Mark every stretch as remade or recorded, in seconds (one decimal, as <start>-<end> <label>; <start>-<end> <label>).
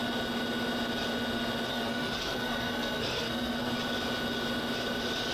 0.0-1.7 recorded; 1.7-3.7 remade; 3.7-5.3 recorded